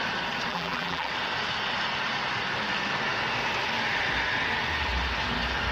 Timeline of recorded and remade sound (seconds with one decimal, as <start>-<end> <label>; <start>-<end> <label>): 0.0-0.5 recorded; 0.5-1.1 remade; 1.1-5.7 recorded